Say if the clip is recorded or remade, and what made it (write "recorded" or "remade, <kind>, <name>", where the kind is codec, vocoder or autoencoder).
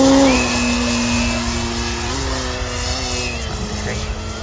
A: recorded